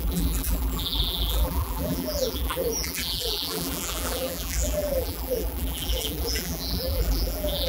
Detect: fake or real fake